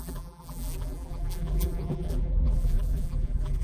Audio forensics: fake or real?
fake